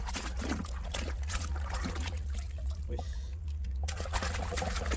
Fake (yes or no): yes